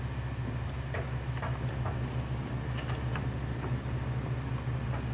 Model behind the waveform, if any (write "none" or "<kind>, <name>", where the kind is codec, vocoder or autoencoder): none